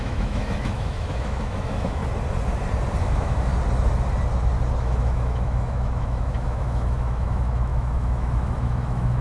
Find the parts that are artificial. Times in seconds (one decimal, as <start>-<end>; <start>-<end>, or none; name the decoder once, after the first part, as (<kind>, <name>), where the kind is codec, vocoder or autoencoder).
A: 0.0-2.0 (autoencoder, DAC-VAE); 3.0-3.5; 4.8-9.2